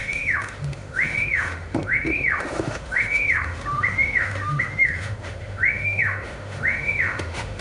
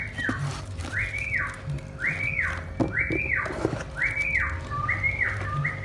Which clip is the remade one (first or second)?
first